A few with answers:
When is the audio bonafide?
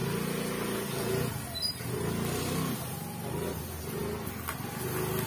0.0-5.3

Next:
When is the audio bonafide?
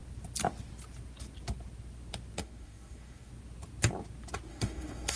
0.0-2.4; 3.3-4.5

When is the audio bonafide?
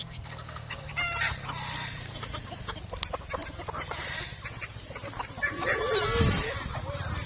0.9-7.3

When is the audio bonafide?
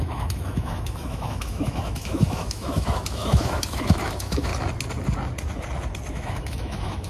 4.5-6.1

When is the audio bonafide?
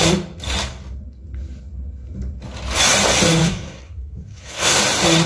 0.0-3.4; 4.8-5.3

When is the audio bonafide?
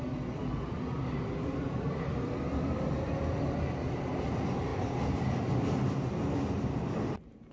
0.0-7.5